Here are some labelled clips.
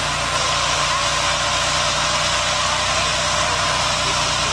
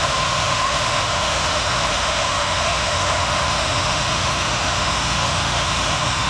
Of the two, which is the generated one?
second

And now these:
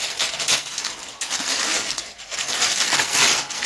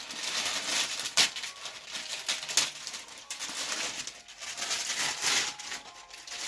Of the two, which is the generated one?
first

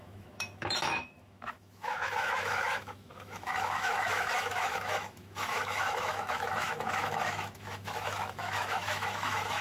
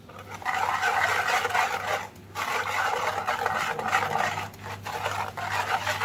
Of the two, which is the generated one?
first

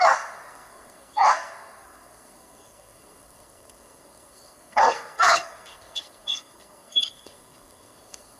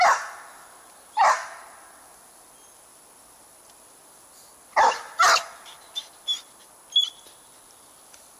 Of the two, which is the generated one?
first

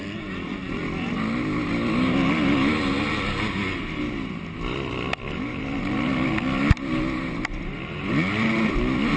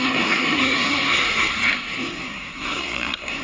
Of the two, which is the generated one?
second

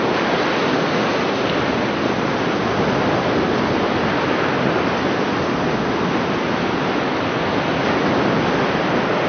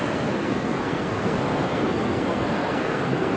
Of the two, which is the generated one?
second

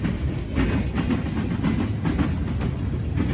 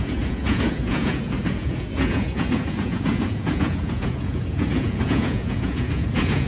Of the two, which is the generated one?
second